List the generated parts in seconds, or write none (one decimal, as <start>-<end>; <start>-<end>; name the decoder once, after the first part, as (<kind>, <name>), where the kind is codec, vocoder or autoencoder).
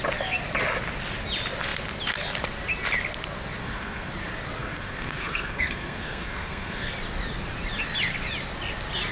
3.6-4.1 (codec, SNAC); 4.6-6.9